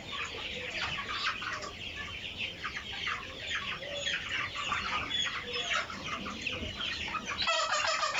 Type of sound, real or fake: real